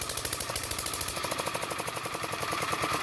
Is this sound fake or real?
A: fake